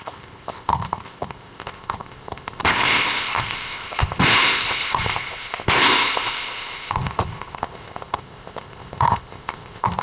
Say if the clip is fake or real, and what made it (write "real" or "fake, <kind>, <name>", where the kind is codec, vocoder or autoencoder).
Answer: fake, codec, ZipCodec